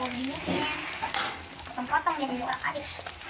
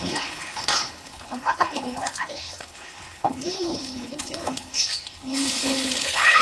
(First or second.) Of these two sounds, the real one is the first